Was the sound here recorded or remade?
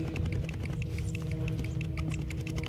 recorded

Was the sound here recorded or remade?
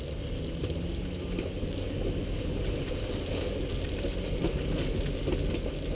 recorded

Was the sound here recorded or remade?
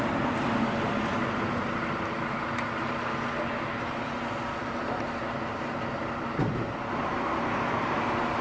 recorded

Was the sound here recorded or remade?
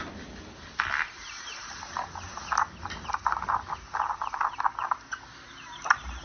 recorded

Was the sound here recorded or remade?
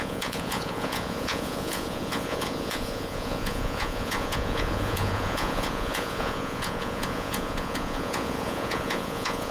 remade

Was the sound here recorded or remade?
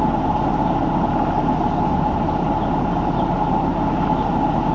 recorded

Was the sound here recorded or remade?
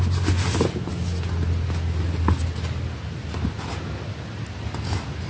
recorded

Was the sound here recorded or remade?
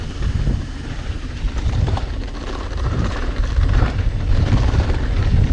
remade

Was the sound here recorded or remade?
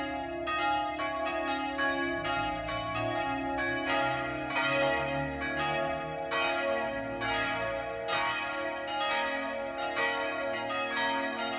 recorded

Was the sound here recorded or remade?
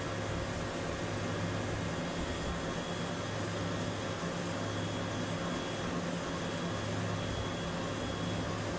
recorded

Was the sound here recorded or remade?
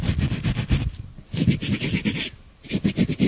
recorded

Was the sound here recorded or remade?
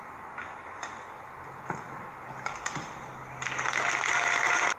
recorded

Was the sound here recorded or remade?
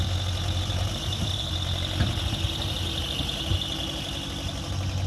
recorded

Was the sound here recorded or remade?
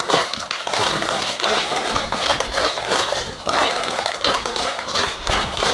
remade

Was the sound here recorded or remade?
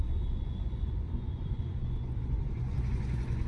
remade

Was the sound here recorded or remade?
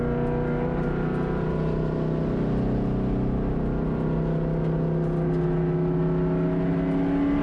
recorded